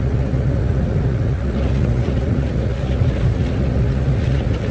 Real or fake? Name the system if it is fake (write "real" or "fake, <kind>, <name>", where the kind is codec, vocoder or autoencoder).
fake, vocoder, Vocos